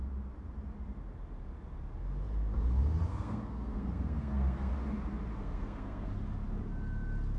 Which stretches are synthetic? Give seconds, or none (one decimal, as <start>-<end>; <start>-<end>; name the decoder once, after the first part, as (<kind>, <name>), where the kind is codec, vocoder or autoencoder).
3.1-4.7 (codec, SNAC); 5.3-6.1